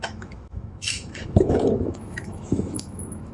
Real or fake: fake